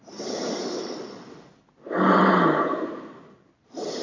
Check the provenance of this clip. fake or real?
real